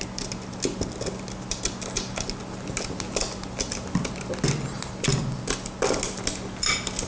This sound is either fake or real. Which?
real